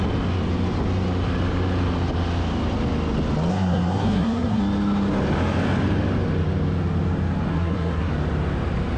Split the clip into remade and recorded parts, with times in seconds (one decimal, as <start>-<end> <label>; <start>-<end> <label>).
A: 0.0-3.5 recorded; 3.5-4.6 remade; 4.6-7.5 recorded; 7.5-8.1 remade; 8.1-9.0 recorded